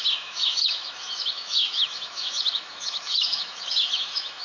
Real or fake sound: fake